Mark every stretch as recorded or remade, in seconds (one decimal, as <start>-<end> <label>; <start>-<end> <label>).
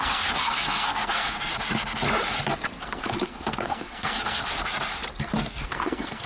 0.0-1.5 remade; 1.5-2.8 recorded; 2.8-4.5 remade; 4.5-5.2 recorded; 5.2-6.3 remade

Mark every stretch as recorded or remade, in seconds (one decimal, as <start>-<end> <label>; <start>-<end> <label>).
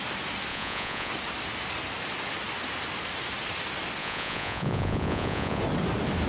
0.0-0.5 recorded; 0.5-1.1 remade; 1.1-4.0 recorded; 4.0-5.6 remade; 5.6-6.3 recorded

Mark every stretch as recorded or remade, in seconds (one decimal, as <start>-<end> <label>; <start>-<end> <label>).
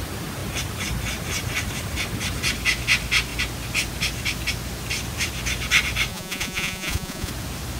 0.0-6.1 recorded; 6.1-7.3 remade; 7.3-7.8 recorded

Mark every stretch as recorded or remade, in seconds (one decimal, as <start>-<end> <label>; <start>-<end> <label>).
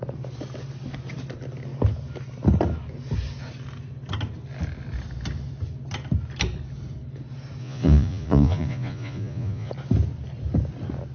0.0-7.6 recorded; 7.6-9.7 remade; 9.7-11.1 recorded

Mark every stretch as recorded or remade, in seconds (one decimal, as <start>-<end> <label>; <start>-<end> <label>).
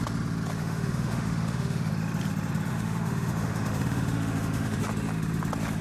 0.0-0.6 recorded; 0.6-1.9 remade; 1.9-2.7 recorded; 2.7-4.8 remade; 4.8-5.8 recorded